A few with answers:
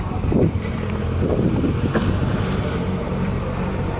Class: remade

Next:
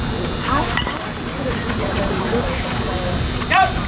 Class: remade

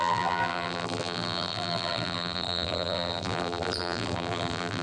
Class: remade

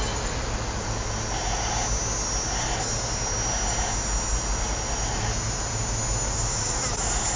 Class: recorded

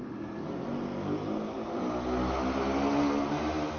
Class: recorded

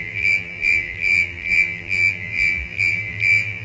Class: remade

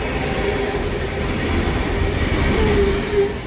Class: remade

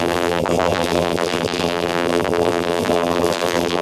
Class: remade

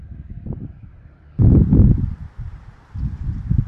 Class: remade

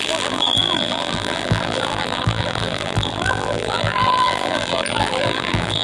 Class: remade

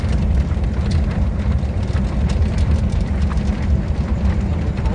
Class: remade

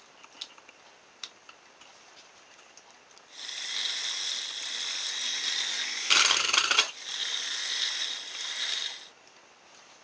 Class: recorded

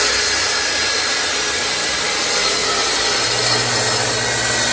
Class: recorded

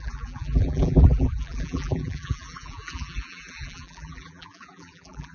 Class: remade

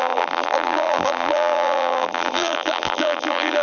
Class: remade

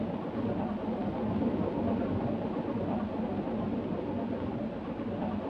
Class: recorded